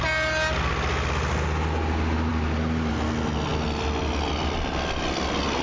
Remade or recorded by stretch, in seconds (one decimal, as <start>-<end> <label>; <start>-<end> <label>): 0.0-5.6 recorded